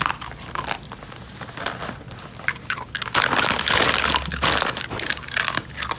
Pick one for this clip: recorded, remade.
recorded